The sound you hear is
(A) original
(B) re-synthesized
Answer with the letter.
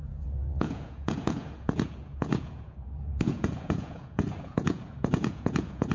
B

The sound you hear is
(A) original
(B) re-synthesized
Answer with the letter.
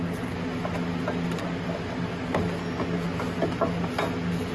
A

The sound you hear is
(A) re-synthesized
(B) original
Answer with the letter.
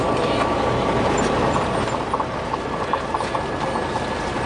B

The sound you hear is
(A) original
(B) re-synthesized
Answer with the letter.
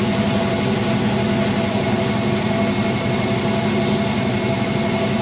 A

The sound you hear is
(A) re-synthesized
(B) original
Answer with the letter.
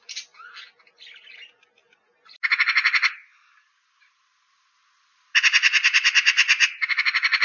B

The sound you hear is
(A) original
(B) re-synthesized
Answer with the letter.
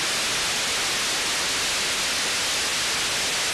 A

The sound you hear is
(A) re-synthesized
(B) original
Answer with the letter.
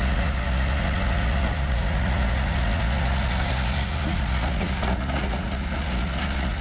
A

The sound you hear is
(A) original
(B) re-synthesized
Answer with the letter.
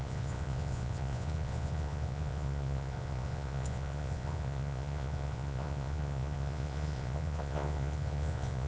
B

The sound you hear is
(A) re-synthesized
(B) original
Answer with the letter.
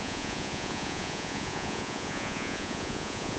A